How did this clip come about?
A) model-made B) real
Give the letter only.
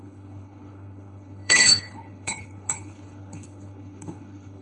A